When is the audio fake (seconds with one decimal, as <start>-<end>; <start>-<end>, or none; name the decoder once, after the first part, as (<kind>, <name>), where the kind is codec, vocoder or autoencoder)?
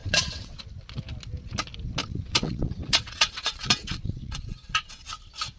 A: 0.0-0.6 (vocoder, WaveNeXt); 2.0-5.1